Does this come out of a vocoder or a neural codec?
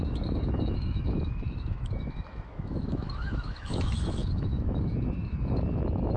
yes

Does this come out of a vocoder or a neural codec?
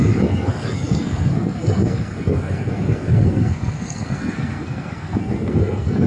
yes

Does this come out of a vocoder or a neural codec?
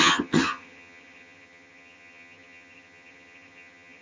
yes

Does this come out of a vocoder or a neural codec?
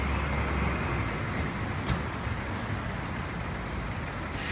no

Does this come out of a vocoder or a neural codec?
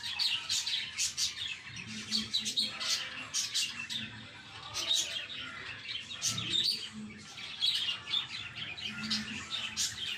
no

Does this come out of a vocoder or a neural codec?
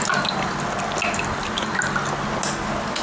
no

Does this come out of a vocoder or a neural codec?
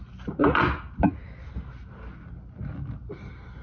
no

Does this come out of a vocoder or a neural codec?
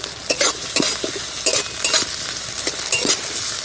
no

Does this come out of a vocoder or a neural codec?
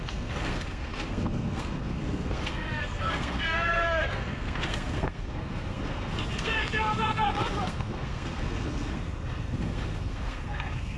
yes